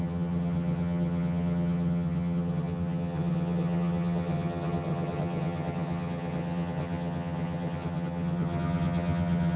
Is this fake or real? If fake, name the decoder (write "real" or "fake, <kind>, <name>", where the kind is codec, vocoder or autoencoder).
fake, vocoder, HiFi-GAN